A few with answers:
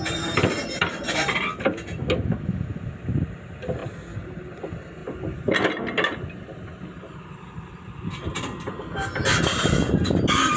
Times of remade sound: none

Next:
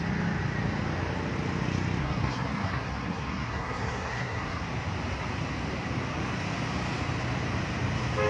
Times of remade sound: 2.0-4.6 (codec, SNAC)

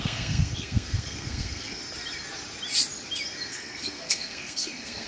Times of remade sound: 0.0-1.8 (codec, SNAC); 3.5-5.1

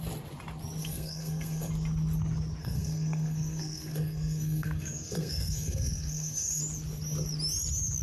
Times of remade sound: 0.8-1.7 (codec, SNAC); 2.6-6.6

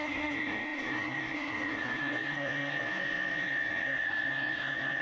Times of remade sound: 0.0-5.0 (codec, SNAC)

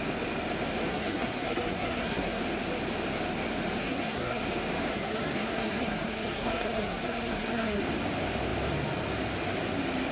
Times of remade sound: 0.9-2.4 (codec, SNAC); 3.8-4.4; 4.9-7.8

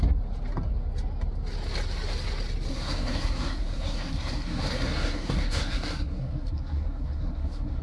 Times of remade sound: 2.7-7.8 (codec, SNAC)